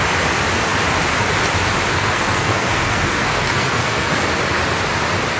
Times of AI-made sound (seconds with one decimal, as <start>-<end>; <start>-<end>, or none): 1.9-4.3